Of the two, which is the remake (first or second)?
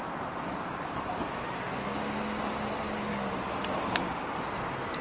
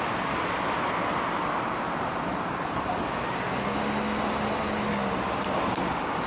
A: first